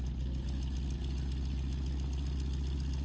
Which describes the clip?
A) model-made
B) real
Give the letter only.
B